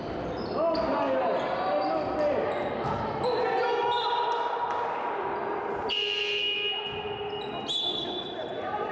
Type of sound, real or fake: real